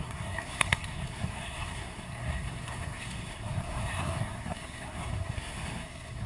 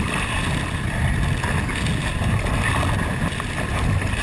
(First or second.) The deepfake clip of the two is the first